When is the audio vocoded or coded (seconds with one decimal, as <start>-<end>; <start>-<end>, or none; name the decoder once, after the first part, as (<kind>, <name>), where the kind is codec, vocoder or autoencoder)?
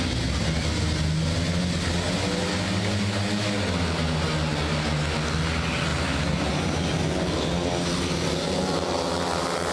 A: none